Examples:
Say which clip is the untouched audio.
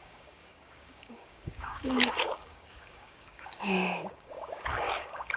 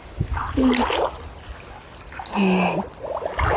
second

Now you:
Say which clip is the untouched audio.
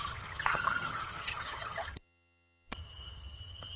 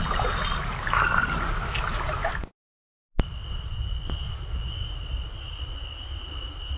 second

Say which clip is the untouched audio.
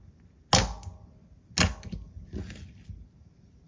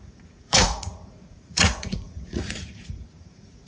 first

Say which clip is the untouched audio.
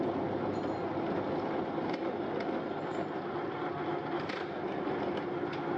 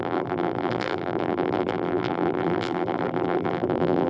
first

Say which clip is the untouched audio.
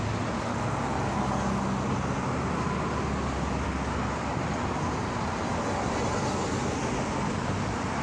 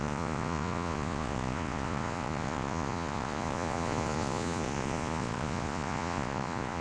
first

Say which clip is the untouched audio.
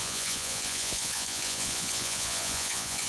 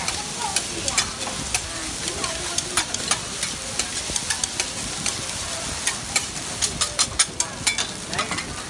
second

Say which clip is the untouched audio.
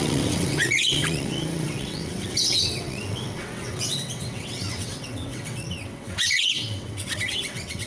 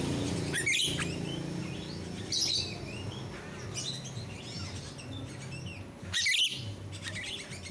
second